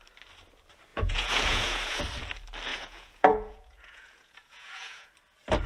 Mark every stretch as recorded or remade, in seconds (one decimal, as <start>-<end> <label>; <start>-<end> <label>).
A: 0.0-0.9 recorded; 0.9-2.0 remade; 2.0-2.7 recorded; 2.7-5.1 remade; 5.1-5.7 recorded